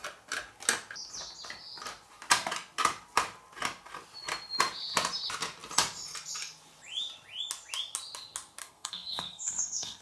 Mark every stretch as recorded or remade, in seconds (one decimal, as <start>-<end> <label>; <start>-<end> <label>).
0.0-8.6 recorded; 8.6-10.0 remade